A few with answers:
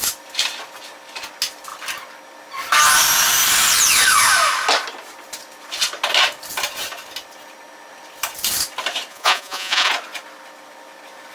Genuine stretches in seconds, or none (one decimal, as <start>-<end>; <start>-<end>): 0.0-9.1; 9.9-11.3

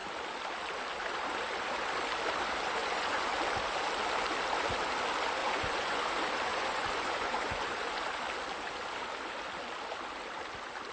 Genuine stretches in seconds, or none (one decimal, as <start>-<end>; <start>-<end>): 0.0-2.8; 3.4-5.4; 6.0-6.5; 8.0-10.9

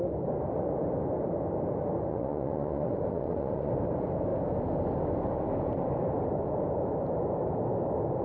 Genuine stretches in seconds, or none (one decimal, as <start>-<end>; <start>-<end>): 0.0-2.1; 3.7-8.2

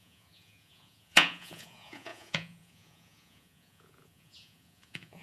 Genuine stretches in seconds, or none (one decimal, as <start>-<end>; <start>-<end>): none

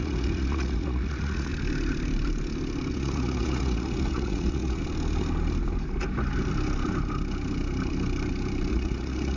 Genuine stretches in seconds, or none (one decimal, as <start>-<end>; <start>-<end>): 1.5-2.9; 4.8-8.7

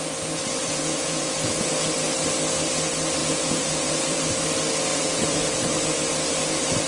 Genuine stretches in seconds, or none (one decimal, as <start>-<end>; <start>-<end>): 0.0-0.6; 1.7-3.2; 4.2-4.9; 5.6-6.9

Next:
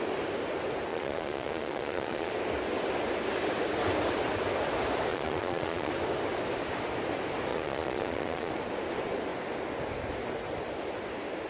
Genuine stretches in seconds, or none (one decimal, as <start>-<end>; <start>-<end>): 0.0-0.9; 2.3-5.1; 5.9-7.5; 8.5-11.5